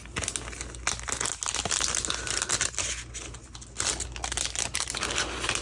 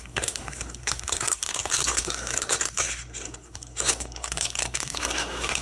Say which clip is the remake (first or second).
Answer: second